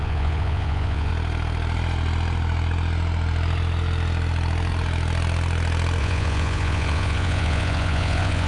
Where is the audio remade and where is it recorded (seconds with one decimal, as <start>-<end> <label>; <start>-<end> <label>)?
0.0-1.1 remade; 1.1-6.0 recorded; 6.0-8.5 remade